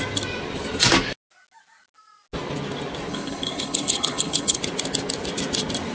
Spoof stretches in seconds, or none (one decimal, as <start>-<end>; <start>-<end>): 3.1-4.6